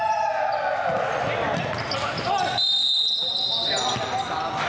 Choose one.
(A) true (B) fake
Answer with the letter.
A